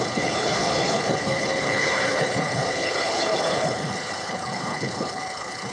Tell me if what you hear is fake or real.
fake